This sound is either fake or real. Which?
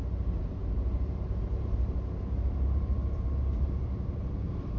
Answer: fake